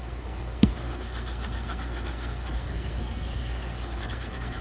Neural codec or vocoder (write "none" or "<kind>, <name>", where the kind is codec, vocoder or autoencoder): codec, SNAC